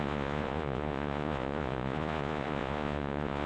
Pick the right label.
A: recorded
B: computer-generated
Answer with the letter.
B